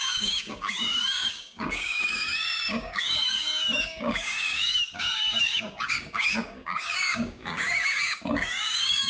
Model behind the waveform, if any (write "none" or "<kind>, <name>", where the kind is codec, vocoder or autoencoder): codec, DAC